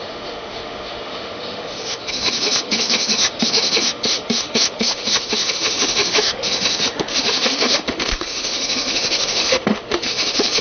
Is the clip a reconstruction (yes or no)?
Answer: yes